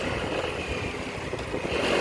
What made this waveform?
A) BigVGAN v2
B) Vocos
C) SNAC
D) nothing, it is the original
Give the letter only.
D